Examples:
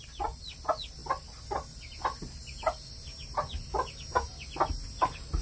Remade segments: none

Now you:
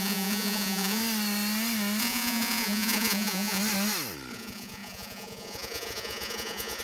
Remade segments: 0.0-1.0 (vocoder, Vocos); 2.0-3.6; 4.3-6.8

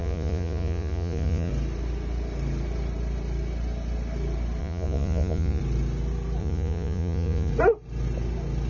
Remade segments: 0.0-1.5 (vocoder, Vocos); 4.6-5.6; 6.4-7.5

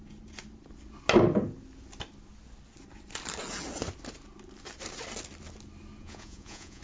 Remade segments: 6.0-6.8 (vocoder, Vocos)

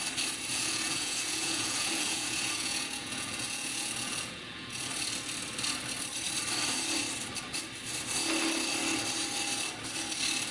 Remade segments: 0.5-4.9 (vocoder, Vocos)

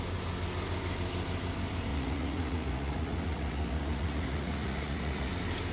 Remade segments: 1.9-5.3 (vocoder, Vocos)